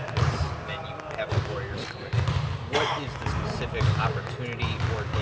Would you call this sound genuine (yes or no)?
yes